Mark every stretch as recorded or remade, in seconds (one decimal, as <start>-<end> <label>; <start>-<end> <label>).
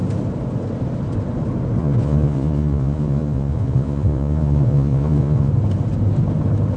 0.0-1.8 recorded; 1.8-5.5 remade; 5.5-6.8 recorded